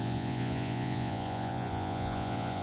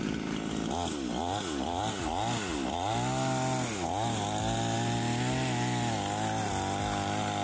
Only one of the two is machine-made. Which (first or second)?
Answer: first